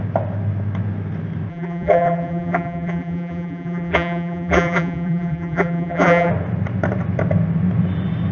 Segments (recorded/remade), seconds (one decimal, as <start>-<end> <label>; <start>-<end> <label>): 0.0-1.5 recorded; 1.5-6.3 remade; 6.3-8.3 recorded